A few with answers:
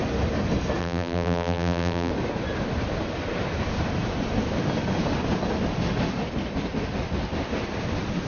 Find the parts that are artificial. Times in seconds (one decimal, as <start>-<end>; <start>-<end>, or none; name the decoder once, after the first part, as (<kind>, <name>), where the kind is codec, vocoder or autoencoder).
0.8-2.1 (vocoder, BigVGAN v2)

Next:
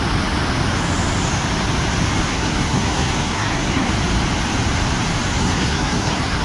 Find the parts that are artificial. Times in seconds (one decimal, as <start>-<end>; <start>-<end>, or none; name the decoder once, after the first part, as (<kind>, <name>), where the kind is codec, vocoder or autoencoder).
2.3-3.9 (codec, SNAC); 5.4-6.4

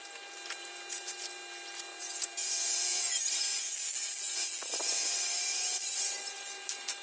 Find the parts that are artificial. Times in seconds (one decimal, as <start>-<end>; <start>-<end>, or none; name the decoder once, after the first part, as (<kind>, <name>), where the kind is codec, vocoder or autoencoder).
1.9-2.5 (vocoder, Vocos); 2.9-4.6

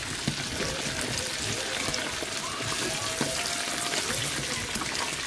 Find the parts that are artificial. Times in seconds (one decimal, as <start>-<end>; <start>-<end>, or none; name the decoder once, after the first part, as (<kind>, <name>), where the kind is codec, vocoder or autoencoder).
none

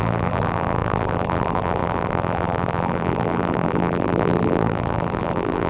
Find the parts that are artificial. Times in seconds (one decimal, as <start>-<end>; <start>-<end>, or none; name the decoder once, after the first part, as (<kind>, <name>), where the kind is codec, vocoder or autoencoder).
0.0-5.7 (vocoder, BigVGAN v2)

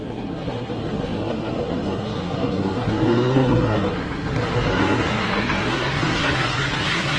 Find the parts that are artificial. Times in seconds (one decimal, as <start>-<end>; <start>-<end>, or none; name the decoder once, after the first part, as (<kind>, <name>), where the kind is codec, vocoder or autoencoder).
0.0-7.2 (codec, SNAC)

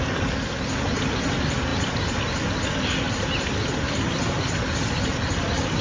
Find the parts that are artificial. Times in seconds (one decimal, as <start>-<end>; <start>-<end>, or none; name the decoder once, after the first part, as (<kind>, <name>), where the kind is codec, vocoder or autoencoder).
none

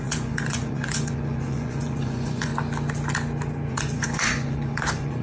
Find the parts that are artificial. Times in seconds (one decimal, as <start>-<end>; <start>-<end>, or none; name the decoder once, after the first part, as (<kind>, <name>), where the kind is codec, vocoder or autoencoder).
0.0-2.5 (vocoder, Vocos); 3.7-5.2